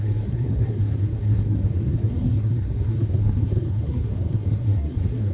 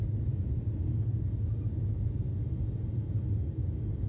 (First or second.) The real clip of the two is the second